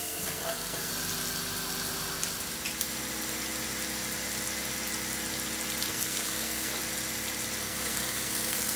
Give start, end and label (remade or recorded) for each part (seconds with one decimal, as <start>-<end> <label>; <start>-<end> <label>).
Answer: 0.0-0.9 remade; 0.9-5.9 recorded; 5.9-6.7 remade; 6.7-7.6 recorded; 7.6-8.8 remade